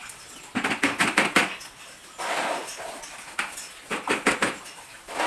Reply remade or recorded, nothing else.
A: recorded